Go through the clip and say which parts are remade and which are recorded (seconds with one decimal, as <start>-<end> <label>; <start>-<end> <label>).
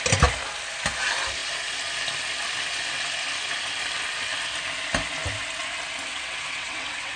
0.0-6.1 recorded; 6.1-7.2 remade